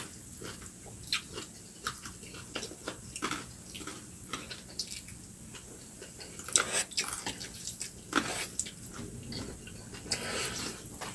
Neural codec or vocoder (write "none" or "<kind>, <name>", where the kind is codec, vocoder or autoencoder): none